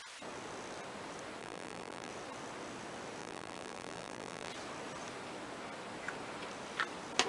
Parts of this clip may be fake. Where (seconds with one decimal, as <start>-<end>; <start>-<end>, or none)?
1.4-2.1; 3.2-4.5